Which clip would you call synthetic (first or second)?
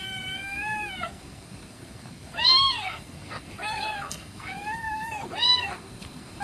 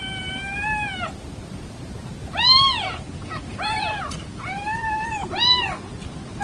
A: first